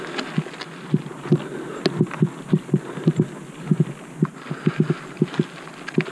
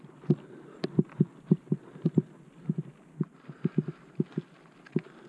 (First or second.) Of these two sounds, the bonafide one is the first